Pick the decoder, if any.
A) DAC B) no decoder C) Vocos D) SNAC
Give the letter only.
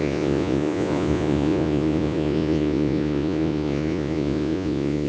C